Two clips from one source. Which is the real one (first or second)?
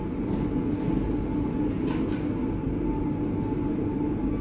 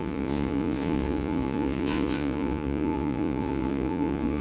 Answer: first